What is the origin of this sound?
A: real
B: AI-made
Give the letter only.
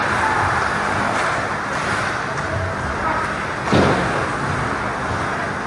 A